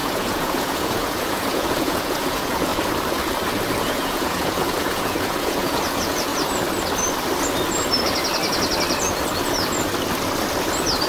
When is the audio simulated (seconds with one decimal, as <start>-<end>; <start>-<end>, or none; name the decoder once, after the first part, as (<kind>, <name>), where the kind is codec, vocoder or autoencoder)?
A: 0.0-2.7 (vocoder, Vocos); 3.8-6.3